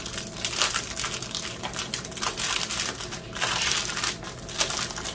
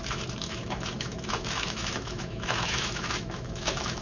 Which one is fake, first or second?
second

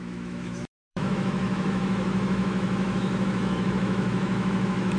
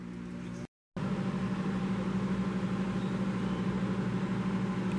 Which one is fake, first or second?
first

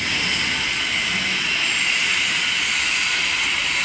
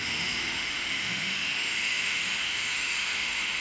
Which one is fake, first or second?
second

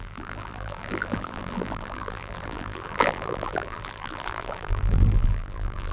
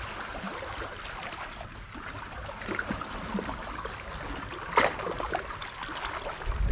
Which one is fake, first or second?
first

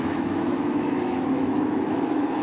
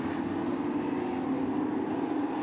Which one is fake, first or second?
first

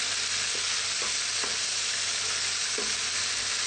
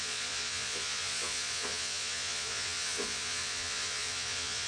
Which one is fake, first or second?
second